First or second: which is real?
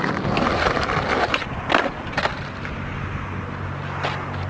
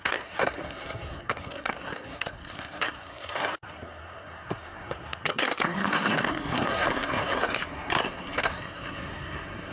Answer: first